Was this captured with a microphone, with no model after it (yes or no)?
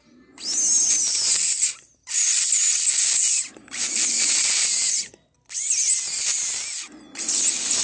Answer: yes